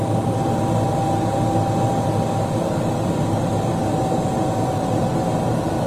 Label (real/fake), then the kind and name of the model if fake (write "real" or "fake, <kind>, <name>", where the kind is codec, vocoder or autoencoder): real